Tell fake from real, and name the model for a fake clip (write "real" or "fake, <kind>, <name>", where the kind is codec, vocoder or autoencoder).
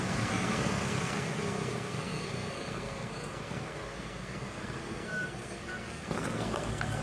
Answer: fake, codec, SNAC